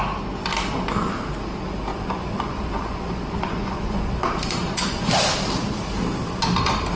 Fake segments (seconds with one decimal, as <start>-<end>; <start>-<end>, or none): 1.9-5.0